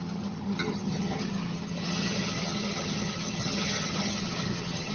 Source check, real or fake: fake